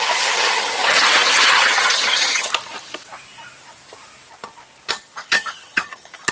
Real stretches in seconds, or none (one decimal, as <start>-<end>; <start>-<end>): 2.5-4.9